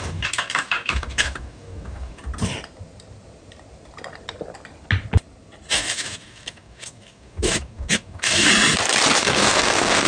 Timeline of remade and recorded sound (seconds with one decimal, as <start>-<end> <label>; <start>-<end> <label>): 0.0-2.2 remade; 2.2-5.7 recorded; 5.7-8.5 remade; 8.5-9.2 recorded; 9.2-10.1 remade